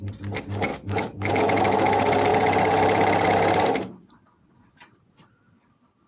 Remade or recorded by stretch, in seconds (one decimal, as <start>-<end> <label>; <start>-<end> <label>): 0.0-0.7 recorded; 0.7-1.4 remade; 1.4-6.1 recorded